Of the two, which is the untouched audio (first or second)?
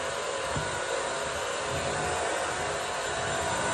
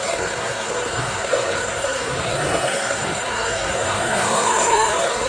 first